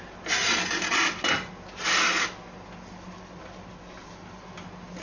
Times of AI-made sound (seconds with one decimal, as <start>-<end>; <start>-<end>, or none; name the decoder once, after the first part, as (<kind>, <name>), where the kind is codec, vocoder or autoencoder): none